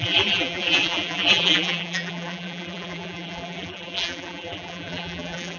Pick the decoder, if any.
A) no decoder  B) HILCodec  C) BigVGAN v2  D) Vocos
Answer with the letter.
C